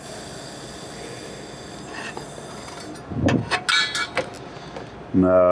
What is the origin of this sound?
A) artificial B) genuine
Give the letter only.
B